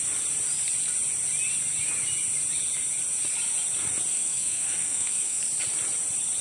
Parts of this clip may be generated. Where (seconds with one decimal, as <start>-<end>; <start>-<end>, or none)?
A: 4.1-5.4